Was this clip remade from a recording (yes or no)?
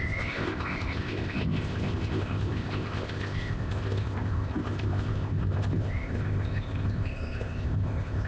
yes